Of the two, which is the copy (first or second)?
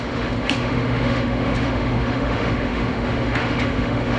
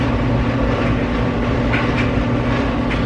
first